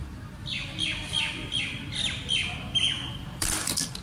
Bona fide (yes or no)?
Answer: no